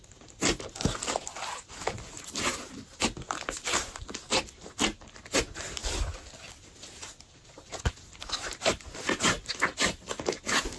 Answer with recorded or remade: recorded